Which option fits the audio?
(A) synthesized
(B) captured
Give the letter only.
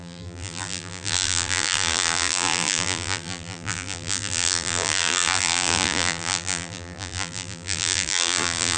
A